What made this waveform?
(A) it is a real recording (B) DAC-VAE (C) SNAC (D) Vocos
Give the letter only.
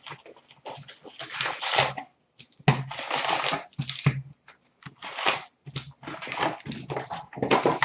A